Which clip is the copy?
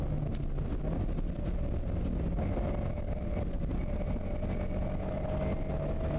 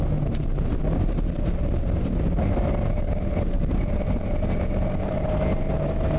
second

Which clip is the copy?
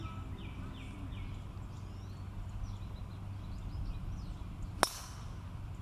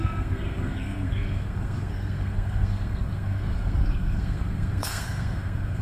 second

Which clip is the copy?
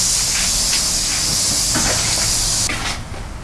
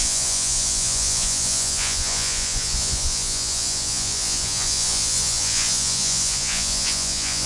second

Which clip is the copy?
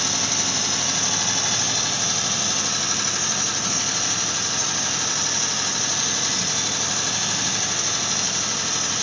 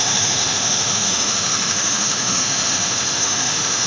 second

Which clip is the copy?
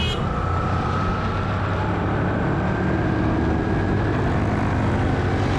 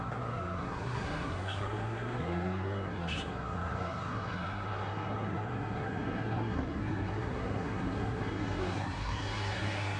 second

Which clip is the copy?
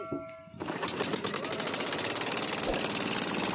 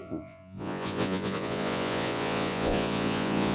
second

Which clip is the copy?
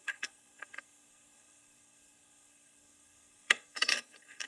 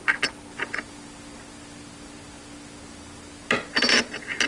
first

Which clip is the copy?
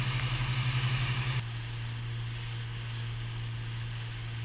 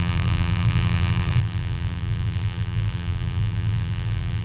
second